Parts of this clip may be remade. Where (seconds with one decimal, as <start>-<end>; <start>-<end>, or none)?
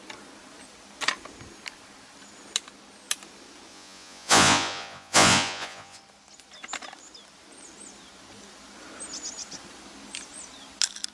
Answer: 3.7-6.0